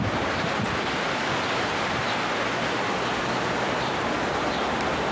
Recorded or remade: recorded